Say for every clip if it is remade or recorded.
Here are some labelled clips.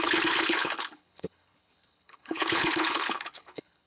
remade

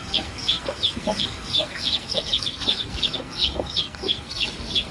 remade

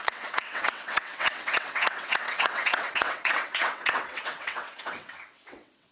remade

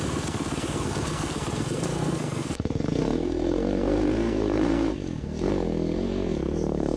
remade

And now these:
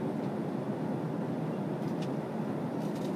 recorded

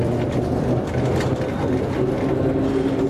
recorded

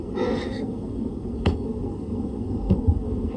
remade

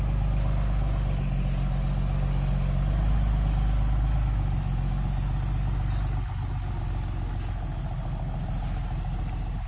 recorded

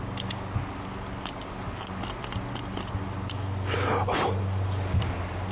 recorded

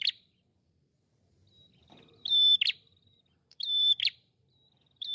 remade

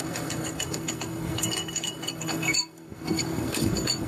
remade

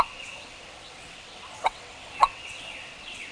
remade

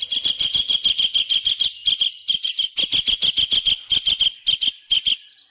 recorded